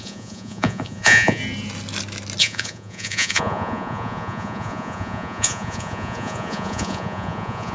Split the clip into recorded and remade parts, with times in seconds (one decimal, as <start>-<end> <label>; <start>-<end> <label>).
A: 0.0-1.4 remade; 1.4-2.4 recorded; 2.4-7.7 remade